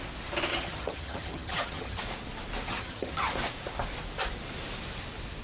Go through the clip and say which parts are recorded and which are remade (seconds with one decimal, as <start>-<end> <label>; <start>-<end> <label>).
0.0-0.5 recorded; 0.5-2.0 remade; 2.0-2.7 recorded; 2.7-3.3 remade; 3.3-5.4 recorded